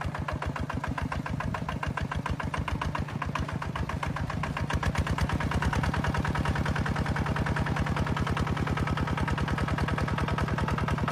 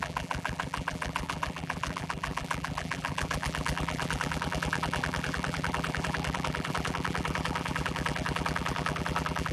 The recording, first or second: first